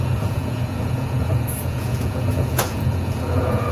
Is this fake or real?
fake